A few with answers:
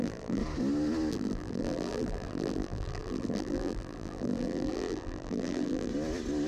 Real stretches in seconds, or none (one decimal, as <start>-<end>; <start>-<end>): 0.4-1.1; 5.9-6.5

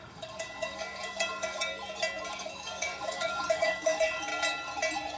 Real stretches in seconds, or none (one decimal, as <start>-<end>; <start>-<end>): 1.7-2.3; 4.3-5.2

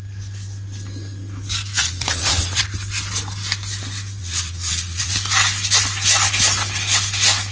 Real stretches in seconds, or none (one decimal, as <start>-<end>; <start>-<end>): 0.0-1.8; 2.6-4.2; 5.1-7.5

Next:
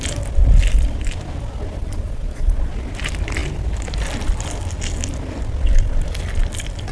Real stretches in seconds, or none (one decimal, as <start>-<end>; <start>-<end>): 0.0-1.8; 2.6-6.9

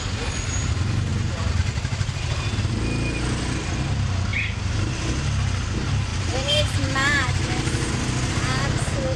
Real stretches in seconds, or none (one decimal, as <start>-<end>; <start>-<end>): 0.0-6.1; 7.9-9.2